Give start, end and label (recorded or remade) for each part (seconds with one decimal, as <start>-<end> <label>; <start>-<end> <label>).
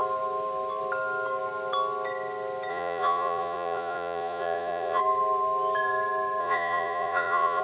0.0-2.7 recorded; 2.7-5.0 remade; 5.0-6.4 recorded; 6.4-7.6 remade